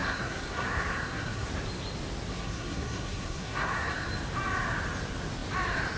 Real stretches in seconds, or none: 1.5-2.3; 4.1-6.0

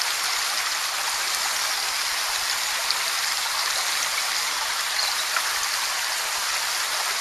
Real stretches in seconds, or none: 0.0-7.2

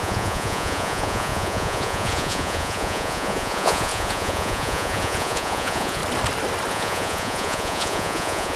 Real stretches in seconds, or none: 6.0-6.7

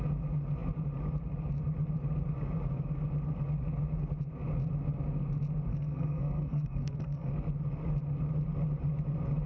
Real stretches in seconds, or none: 0.0-5.7; 7.3-9.5

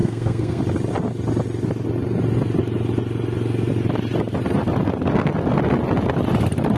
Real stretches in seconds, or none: 0.6-6.8

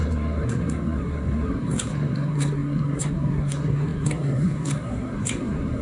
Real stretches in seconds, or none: none

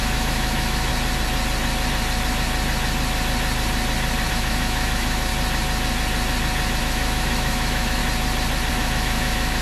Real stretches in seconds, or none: 0.9-4.3; 5.3-6.8; 8.0-8.7